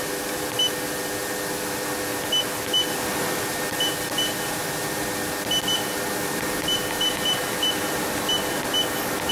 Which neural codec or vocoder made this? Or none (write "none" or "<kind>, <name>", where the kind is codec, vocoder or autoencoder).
none